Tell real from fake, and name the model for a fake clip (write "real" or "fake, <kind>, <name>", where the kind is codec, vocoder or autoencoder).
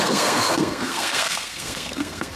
fake, codec, SNAC